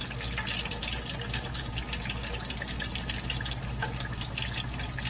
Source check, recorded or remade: recorded